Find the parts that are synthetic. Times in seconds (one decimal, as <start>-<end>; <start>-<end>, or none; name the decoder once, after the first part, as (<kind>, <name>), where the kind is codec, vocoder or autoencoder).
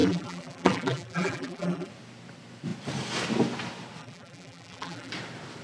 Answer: 0.0-1.9 (vocoder, BigVGAN v2); 4.0-5.1